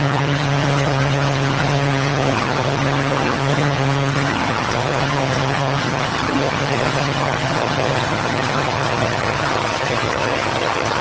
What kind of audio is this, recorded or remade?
remade